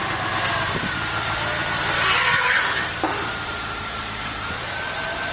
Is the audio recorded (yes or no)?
yes